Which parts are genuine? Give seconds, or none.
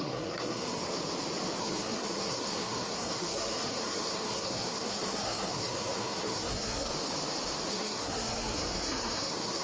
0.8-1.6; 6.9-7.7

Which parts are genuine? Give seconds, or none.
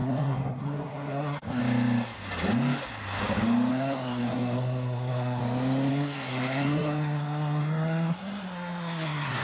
1.6-3.7; 5.4-5.9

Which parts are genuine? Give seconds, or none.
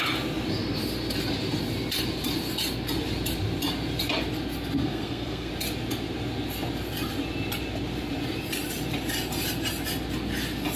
0.0-4.8; 5.5-10.8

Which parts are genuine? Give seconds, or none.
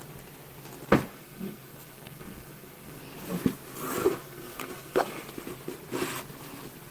0.0-1.1; 3.0-4.0; 5.3-6.9